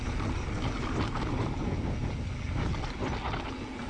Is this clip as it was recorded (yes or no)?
yes